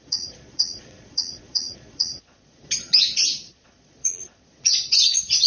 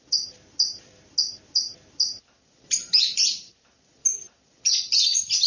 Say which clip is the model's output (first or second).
first